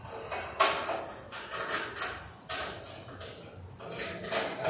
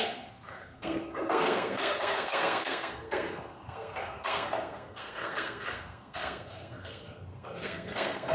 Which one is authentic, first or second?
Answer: first